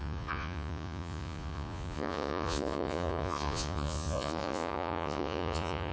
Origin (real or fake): fake